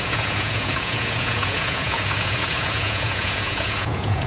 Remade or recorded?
remade